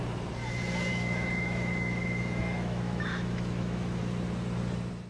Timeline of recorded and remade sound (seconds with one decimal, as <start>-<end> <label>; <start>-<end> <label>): 0.0-0.9 recorded; 0.9-4.0 remade; 4.0-5.1 recorded